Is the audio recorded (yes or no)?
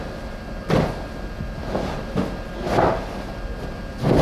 yes